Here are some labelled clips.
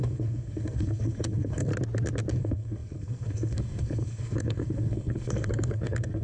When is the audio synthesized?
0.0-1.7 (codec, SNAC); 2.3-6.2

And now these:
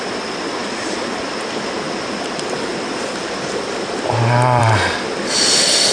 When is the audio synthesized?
none

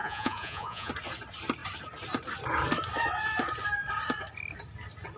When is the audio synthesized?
0.0-0.9 (vocoder, Vocos)

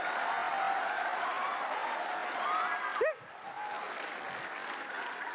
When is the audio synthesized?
none

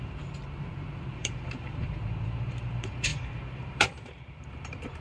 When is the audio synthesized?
0.0-5.0 (vocoder, BigVGAN v2)

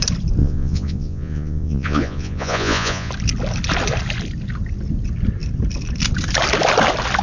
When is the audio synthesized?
0.4-3.1 (vocoder, Vocos)